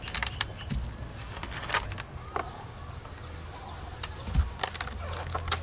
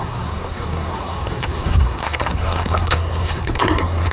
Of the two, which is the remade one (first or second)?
second